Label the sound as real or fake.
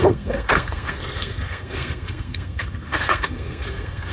fake